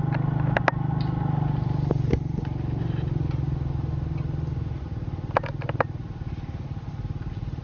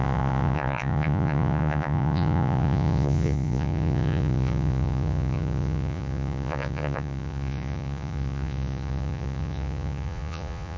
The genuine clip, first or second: first